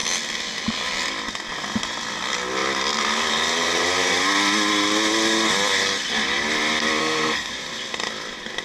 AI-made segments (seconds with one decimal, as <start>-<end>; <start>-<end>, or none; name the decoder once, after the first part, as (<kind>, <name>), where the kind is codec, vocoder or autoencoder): 7.0-7.5 (codec, SNAC)